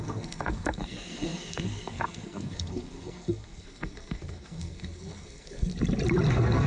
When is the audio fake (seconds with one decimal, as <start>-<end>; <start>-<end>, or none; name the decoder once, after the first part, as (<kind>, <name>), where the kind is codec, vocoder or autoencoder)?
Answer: 0.0-5.7 (codec, SNAC); 6.3-6.7